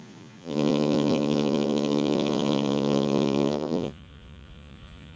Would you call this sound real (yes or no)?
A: no